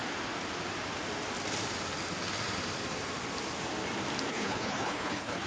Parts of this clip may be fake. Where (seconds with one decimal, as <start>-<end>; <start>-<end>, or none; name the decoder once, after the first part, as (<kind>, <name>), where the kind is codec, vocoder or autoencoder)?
4.3-5.5 (codec, HILCodec)